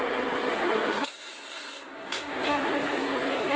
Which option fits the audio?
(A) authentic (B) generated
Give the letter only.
B